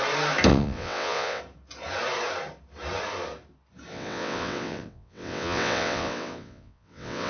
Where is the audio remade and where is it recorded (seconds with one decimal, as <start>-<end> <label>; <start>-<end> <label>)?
0.0-0.5 recorded; 0.5-1.4 remade; 1.4-3.9 recorded; 3.9-7.3 remade